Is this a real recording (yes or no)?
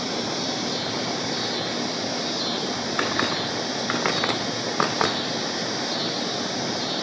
yes